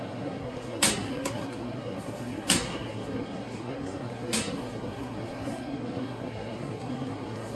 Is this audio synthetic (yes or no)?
yes